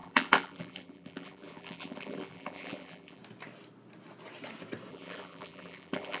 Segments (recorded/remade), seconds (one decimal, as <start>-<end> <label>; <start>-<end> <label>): 0.0-3.2 remade; 3.2-4.9 recorded; 4.9-6.2 remade